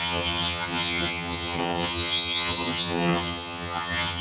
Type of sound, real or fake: fake